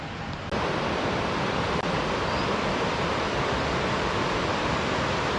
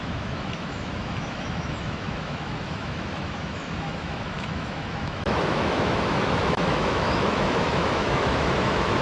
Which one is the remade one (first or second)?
second